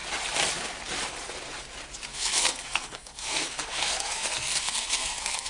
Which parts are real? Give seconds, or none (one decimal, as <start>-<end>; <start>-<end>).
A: 0.0-2.1